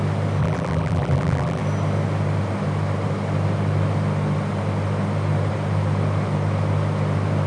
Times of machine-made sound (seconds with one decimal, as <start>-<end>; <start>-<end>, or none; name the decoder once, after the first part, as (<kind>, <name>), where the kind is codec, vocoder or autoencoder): 0.4-1.6 (vocoder, BigVGAN v2)